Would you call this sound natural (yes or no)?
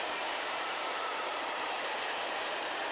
no